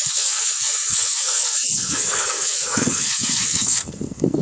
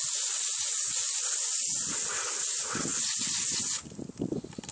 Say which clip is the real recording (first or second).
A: second